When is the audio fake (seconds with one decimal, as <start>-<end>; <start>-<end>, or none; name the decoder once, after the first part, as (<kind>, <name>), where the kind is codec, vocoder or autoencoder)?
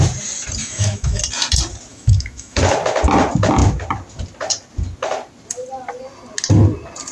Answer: 0.6-1.2 (autoencoder, DAC-VAE); 1.9-2.6